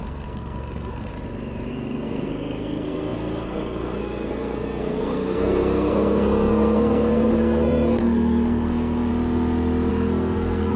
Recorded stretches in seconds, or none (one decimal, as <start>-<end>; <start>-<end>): 1.1-1.7; 9.1-9.9